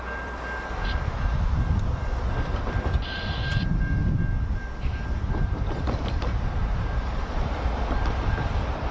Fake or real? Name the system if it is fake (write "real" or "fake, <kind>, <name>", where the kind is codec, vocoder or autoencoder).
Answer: fake, vocoder, BigVGAN v2